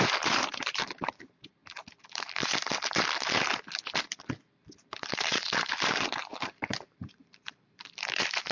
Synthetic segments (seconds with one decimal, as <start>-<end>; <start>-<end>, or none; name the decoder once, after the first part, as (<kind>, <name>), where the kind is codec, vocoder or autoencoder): 0.0-1.6 (vocoder, BigVGAN v2); 5.1-8.5